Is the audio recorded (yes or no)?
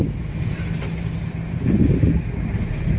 yes